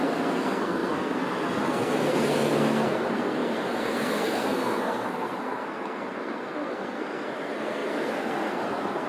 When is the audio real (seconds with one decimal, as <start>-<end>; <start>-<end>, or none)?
none